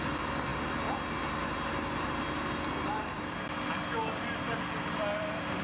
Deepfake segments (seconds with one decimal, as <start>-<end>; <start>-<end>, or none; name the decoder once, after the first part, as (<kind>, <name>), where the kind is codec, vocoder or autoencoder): none